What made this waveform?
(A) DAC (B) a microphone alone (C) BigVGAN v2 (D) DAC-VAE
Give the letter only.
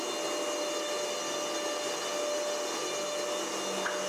B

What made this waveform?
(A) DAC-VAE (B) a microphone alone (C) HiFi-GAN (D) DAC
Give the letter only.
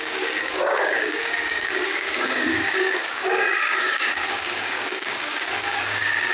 D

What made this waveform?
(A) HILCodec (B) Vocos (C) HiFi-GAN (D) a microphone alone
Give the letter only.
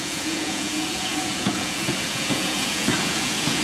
B